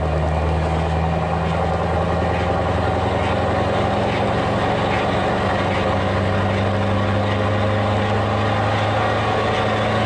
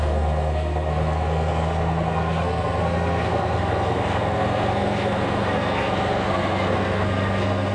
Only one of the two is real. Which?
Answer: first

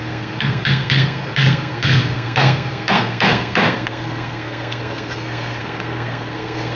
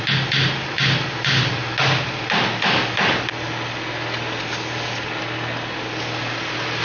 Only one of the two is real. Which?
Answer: second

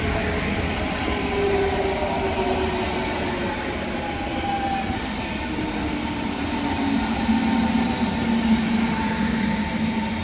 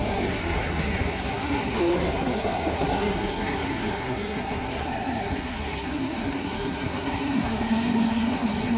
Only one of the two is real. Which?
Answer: first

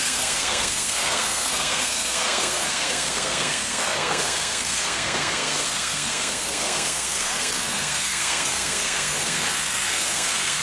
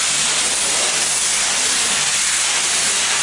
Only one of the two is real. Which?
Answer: second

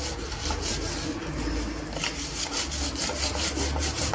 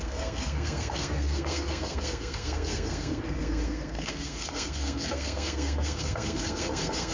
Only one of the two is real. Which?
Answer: first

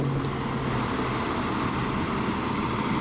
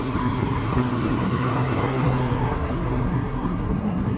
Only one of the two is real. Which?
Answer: first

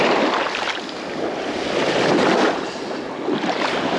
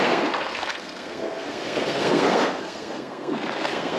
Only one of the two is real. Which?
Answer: first